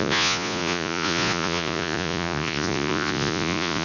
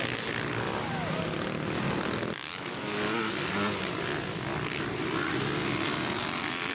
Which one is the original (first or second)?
second